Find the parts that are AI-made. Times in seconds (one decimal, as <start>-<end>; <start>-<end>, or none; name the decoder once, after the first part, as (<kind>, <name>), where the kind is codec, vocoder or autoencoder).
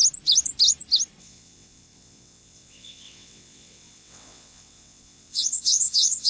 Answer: 1.2-6.3 (vocoder, WaveNeXt)